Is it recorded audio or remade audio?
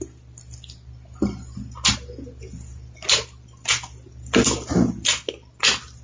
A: recorded